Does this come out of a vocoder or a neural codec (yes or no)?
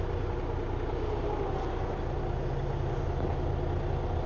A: no